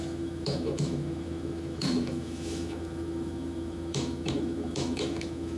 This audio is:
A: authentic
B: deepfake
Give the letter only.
B